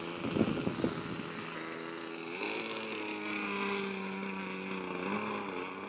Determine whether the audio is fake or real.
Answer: real